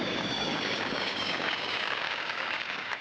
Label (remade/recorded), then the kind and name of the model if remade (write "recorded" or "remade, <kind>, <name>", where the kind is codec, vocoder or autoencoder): remade, codec, DAC